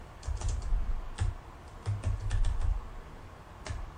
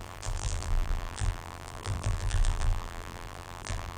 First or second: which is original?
first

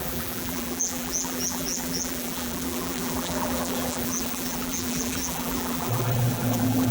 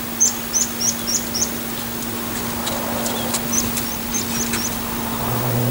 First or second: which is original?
second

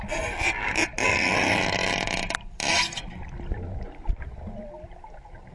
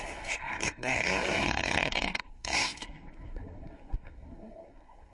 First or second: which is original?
first